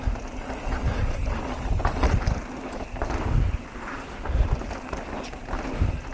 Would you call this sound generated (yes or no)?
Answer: no